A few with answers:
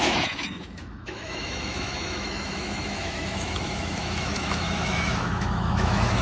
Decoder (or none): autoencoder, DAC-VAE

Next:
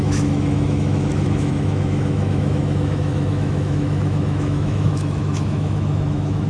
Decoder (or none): autoencoder, DAC-VAE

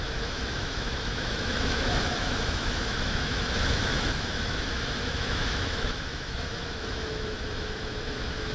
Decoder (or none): autoencoder, DAC-VAE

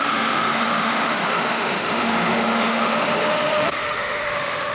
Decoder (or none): autoencoder, DAC-VAE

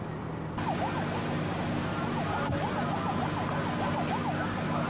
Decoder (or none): none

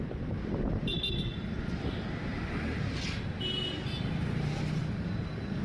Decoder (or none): none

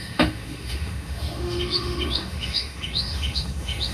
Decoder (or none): autoencoder, DAC-VAE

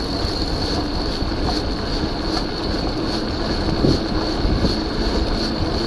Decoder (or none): none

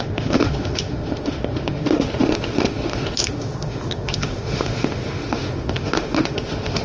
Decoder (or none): autoencoder, DAC-VAE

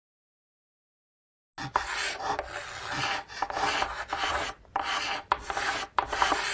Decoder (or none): none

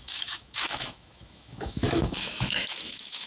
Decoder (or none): autoencoder, DAC-VAE